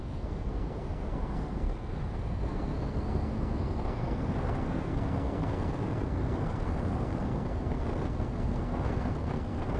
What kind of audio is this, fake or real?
fake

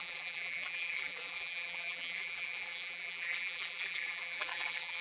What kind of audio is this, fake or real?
fake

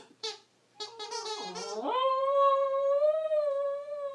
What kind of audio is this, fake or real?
fake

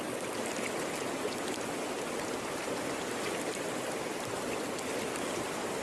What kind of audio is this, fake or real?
real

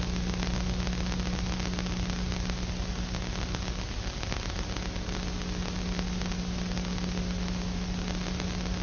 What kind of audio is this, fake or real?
real